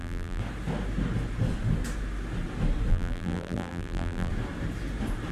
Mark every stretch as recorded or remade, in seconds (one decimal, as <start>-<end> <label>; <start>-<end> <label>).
0.0-0.4 remade; 0.4-2.9 recorded; 2.9-4.3 remade; 4.3-5.3 recorded